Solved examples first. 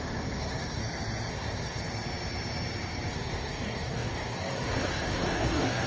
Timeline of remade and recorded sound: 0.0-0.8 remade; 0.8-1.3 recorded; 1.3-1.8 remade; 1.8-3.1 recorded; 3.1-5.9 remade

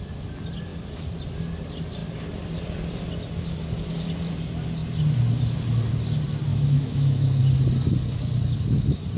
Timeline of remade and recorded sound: 0.0-6.5 recorded; 6.5-7.4 remade; 7.4-9.2 recorded

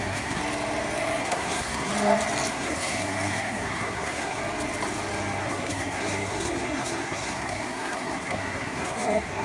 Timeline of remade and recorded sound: 0.0-0.4 remade; 0.4-1.2 recorded; 1.2-1.9 remade; 1.9-2.5 recorded; 2.5-4.4 remade; 4.4-5.4 recorded; 5.4-9.4 remade

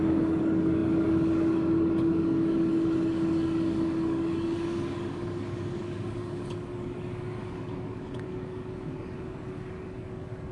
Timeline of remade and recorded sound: 0.0-10.5 remade

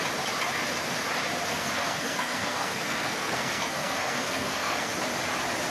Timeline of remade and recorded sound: 0.0-1.5 recorded; 1.5-4.9 remade; 4.9-5.7 recorded

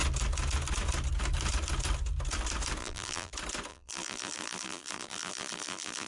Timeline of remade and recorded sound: 0.0-2.8 recorded; 2.8-3.3 remade; 3.3-3.7 recorded; 3.7-6.1 remade

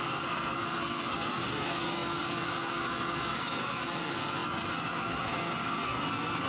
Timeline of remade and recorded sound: 0.0-6.5 remade

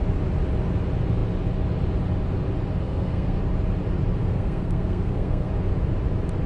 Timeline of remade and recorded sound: 0.0-2.8 recorded; 2.8-3.4 remade; 3.4-4.2 recorded; 4.2-5.5 remade; 5.5-6.5 recorded